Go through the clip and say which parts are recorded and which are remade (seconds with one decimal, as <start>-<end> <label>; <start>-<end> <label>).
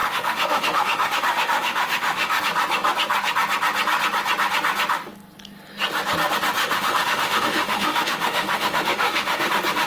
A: 0.0-2.4 remade; 2.4-6.6 recorded; 6.6-9.5 remade; 9.5-9.9 recorded